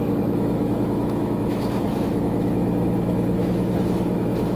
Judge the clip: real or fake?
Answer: fake